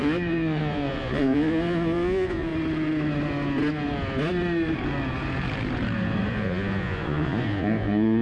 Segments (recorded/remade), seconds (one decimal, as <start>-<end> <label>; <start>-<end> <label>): 0.0-2.5 remade; 2.5-6.3 recorded; 6.3-8.2 remade